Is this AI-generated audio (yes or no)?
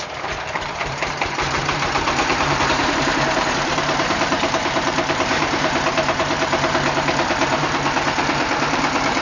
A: yes